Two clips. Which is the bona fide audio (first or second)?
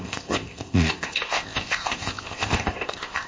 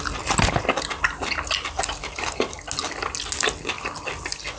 second